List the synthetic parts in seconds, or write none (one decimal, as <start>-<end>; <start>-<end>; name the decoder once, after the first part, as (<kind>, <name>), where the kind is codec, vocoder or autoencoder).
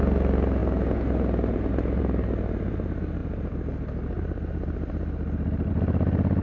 none